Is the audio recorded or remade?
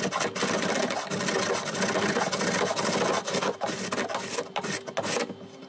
recorded